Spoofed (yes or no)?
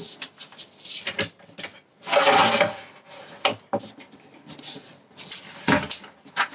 no